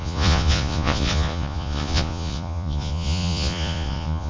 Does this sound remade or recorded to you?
remade